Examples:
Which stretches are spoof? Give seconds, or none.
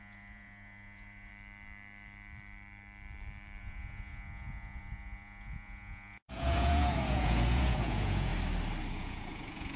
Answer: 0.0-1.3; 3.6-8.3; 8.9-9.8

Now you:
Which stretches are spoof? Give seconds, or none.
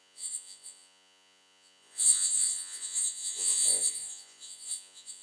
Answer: 0.0-5.2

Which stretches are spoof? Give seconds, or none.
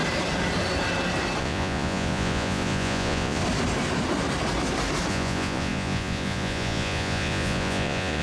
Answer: 1.4-3.4; 5.1-8.2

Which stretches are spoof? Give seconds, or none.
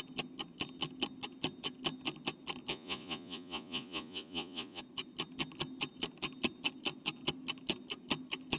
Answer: 2.7-4.8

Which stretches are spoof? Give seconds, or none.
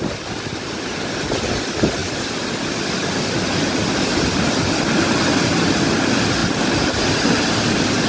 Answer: none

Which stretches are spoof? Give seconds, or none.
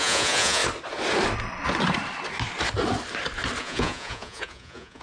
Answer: 0.0-0.6; 3.6-5.0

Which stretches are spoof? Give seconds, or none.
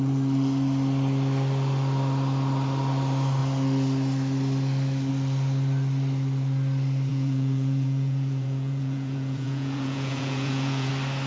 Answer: 7.1-10.9